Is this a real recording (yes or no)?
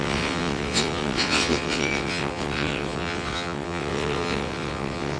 no